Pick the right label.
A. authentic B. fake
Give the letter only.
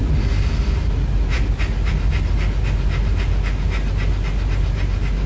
A